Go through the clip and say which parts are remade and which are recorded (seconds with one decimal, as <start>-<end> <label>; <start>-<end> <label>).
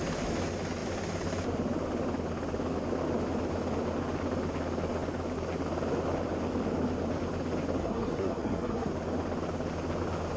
0.0-7.8 recorded; 7.8-8.9 remade; 8.9-10.4 recorded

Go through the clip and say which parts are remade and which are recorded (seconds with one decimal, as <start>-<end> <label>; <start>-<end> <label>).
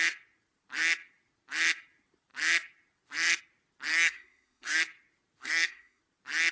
0.0-3.9 recorded; 3.9-4.8 remade; 4.8-5.4 recorded; 5.4-6.0 remade; 6.0-6.5 recorded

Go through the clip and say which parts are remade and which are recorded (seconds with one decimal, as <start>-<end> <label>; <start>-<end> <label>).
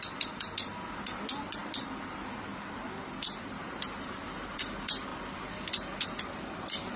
0.0-7.0 recorded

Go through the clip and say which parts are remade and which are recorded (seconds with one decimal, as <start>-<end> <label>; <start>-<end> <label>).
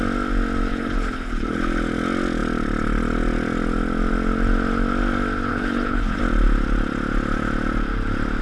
0.0-0.7 recorded; 0.7-1.6 remade; 1.6-5.5 recorded; 5.5-6.2 remade; 6.2-8.4 recorded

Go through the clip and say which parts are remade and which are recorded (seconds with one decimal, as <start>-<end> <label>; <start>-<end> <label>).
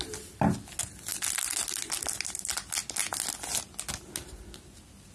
0.0-5.1 recorded